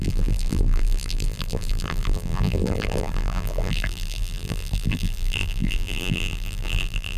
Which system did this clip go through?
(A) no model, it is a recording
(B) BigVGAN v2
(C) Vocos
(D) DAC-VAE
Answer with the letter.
B